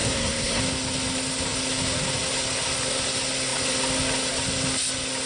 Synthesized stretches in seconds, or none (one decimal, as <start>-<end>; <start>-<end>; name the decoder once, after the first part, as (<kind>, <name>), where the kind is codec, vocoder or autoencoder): 0.0-0.6 (codec, SNAC)